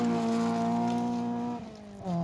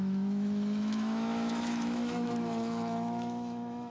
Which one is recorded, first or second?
first